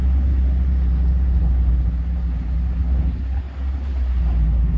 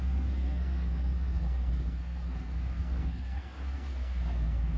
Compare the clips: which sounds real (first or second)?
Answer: first